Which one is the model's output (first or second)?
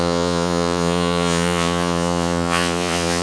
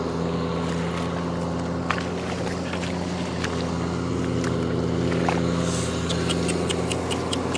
first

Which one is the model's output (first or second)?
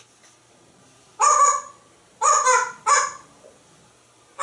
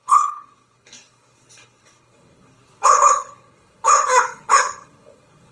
second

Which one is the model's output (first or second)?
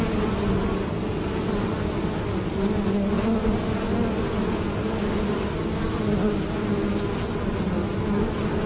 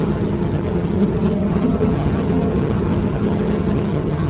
second